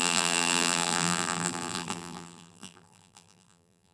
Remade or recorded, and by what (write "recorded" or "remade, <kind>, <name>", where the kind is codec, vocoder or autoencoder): remade, vocoder, BigVGAN v2